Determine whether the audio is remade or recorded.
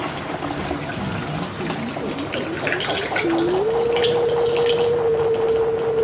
recorded